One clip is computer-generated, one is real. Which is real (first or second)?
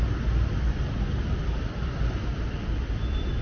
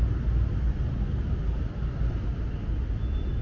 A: second